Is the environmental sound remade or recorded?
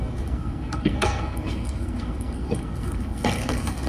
remade